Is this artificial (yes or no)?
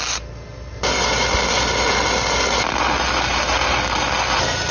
no